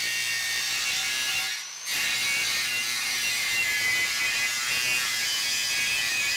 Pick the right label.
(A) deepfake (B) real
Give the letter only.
A